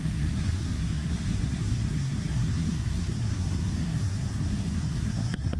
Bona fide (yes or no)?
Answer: no